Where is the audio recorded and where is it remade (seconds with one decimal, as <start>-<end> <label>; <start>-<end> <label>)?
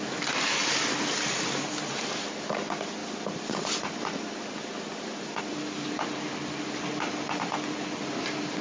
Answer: 0.0-8.6 recorded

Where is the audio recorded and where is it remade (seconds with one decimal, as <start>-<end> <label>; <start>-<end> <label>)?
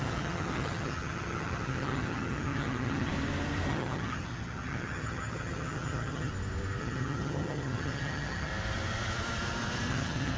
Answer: 0.0-3.1 remade; 3.1-3.7 recorded; 3.7-6.3 remade; 6.3-6.8 recorded; 6.8-8.5 remade; 8.5-9.9 recorded; 9.9-10.4 remade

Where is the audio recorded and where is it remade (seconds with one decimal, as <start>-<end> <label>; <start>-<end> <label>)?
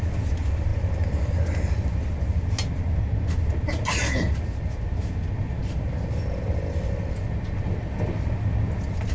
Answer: 0.0-9.1 recorded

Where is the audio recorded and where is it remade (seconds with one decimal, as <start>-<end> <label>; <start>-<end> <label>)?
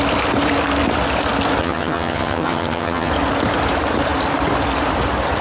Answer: 0.0-1.6 recorded; 1.6-3.1 remade; 3.1-5.4 recorded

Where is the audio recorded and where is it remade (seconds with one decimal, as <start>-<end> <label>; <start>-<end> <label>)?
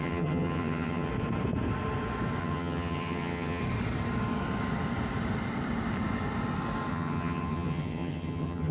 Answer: 0.0-1.1 remade; 1.1-2.4 recorded; 2.4-3.6 remade; 3.6-6.9 recorded; 6.9-8.7 remade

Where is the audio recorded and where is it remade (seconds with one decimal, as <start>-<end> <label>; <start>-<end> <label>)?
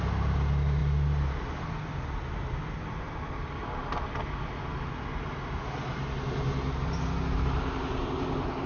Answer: 0.0-8.7 recorded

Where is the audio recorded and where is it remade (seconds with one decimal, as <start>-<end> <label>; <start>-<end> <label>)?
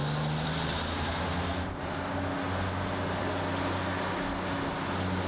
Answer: 0.0-5.3 recorded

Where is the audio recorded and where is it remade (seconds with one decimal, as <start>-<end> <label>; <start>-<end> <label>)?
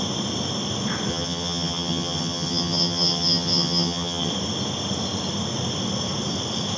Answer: 0.0-1.1 recorded; 1.1-4.3 remade; 4.3-6.8 recorded